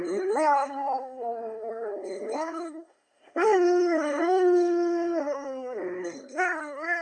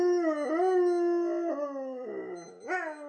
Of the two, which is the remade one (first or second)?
first